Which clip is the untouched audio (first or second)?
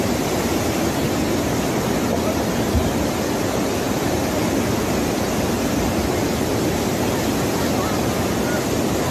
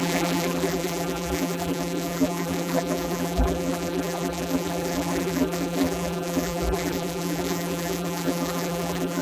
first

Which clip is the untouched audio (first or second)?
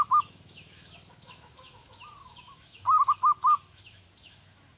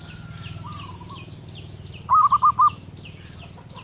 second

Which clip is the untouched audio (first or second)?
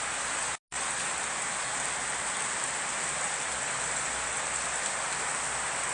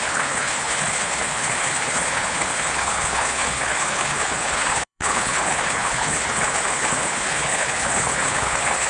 first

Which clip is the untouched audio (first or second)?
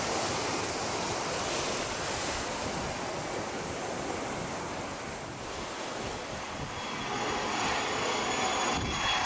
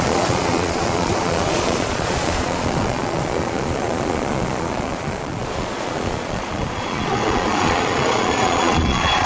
first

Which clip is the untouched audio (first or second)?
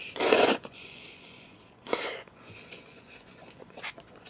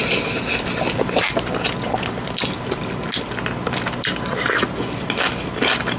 second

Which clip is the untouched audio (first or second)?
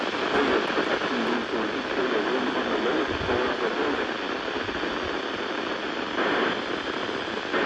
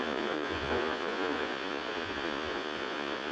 first